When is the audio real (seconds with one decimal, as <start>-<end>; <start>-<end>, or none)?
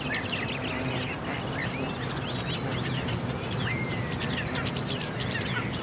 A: 0.0-5.8